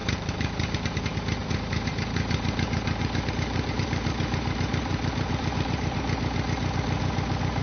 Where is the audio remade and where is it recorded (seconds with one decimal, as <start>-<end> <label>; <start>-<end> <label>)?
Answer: 0.0-1.0 remade; 1.0-1.4 recorded; 1.4-6.0 remade; 6.0-7.6 recorded